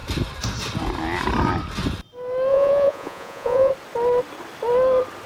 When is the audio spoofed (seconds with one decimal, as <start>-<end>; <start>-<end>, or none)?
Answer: 2.5-3.7